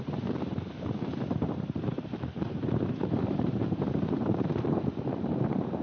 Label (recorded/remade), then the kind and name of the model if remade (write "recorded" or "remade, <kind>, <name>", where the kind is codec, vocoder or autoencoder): remade, vocoder, BigVGAN v2